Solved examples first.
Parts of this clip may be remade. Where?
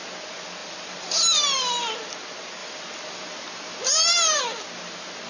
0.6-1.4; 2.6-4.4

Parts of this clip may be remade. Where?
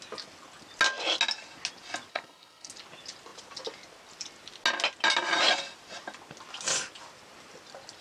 2.1-2.7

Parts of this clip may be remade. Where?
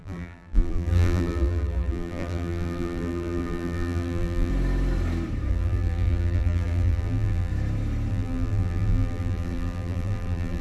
0.0-4.5; 5.5-7.5; 8.1-10.6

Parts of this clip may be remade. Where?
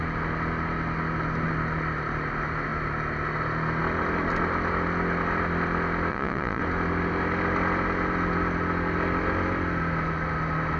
6.1-6.6